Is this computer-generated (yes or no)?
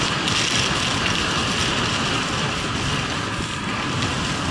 no